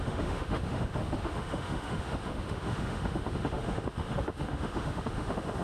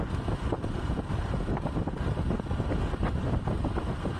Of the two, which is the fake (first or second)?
first